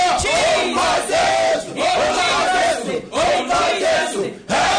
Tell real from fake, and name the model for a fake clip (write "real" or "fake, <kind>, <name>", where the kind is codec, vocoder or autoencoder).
real